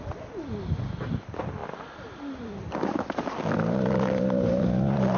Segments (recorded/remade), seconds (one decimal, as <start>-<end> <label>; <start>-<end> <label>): 0.0-5.2 remade